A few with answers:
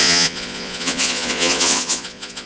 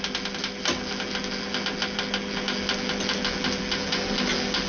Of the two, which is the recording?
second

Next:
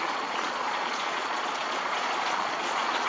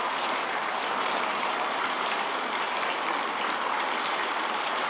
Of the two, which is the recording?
second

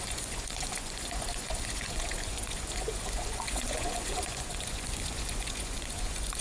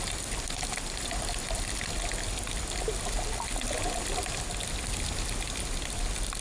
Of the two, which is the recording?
second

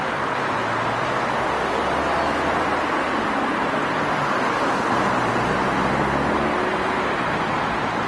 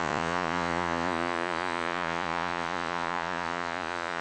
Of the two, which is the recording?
first